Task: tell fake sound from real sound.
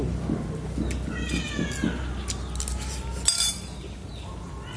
real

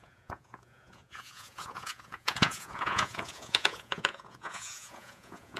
fake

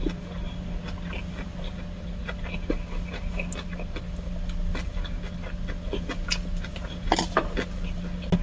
real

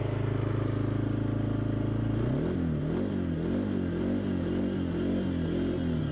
real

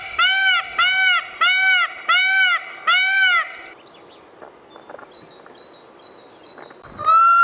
real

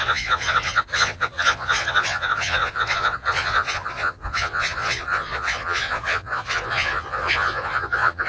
fake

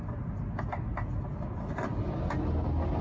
real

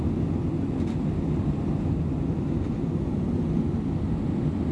real